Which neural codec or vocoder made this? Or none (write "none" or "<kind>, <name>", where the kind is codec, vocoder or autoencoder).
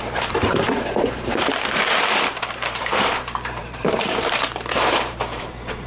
vocoder, BigVGAN v2